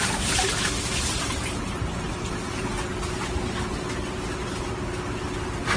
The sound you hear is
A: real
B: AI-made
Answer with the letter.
A